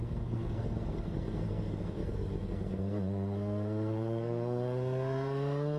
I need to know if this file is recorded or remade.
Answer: remade